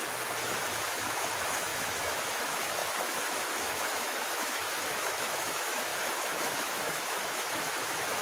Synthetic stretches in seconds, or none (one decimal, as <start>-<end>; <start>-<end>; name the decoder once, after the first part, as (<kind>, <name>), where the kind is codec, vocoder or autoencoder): 0.0-8.2 (autoencoder, DAC-VAE)